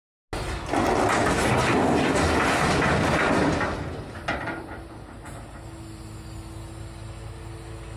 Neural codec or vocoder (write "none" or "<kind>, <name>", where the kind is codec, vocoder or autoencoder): none